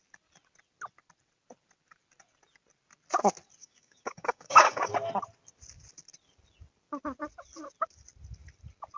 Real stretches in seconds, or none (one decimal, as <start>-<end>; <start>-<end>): 0.0-3.6; 4.9-9.0